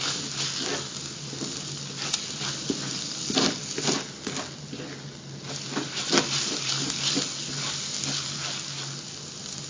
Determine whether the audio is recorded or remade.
recorded